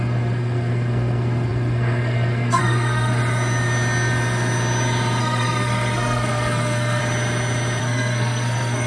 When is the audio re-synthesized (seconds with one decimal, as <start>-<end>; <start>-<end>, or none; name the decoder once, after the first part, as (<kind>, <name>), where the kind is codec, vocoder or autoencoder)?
0.0-3.2 (codec, SNAC); 5.2-7.0; 7.8-8.9